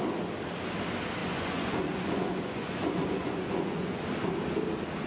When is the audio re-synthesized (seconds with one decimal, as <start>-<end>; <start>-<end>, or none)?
1.2-4.0